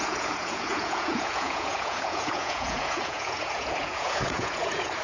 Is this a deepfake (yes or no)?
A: yes